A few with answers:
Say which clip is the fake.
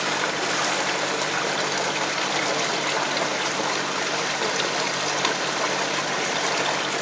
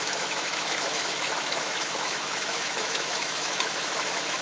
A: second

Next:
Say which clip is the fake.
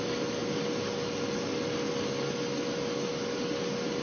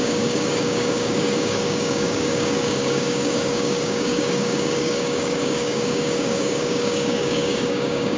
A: second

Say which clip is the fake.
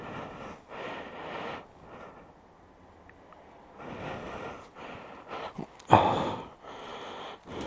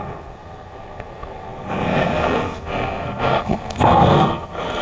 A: second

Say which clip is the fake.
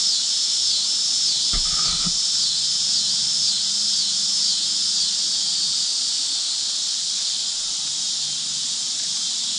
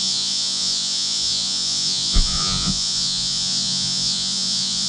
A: second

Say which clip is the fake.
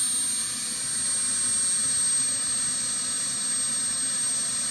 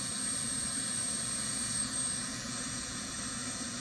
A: second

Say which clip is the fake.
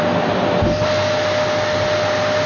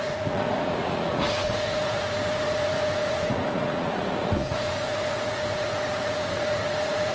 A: second